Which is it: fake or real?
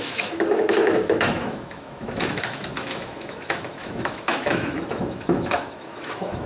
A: fake